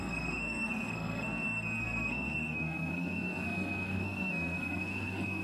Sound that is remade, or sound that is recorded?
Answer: remade